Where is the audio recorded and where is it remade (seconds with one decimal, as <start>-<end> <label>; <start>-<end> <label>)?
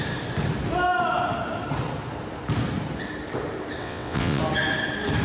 0.0-3.8 recorded; 3.8-4.4 remade; 4.4-5.2 recorded